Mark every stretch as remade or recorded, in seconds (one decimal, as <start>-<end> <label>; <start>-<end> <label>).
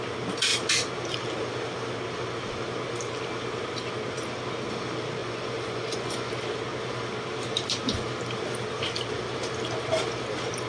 0.0-5.2 recorded; 5.2-6.3 remade; 6.3-10.7 recorded